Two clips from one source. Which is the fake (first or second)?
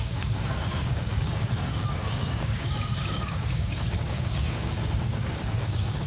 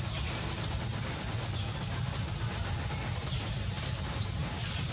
first